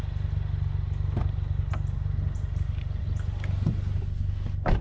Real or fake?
real